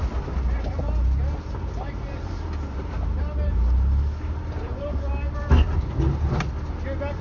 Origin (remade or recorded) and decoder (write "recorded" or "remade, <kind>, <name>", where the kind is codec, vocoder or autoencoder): recorded